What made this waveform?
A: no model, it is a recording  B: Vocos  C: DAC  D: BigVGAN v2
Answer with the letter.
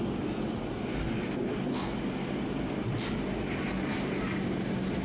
A